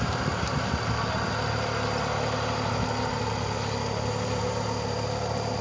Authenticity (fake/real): real